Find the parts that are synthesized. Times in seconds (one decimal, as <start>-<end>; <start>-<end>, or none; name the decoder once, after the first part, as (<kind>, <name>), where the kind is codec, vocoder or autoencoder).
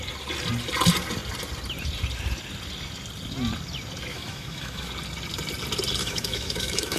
4.1-4.9 (autoencoder, DAC-VAE); 6.0-7.0